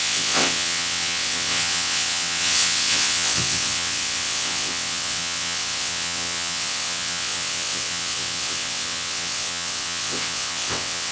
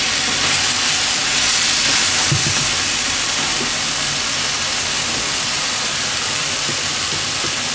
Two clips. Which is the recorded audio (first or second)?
second